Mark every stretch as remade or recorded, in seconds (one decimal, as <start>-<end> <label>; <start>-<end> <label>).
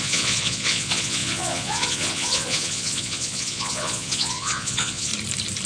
0.0-5.1 remade; 5.1-5.7 recorded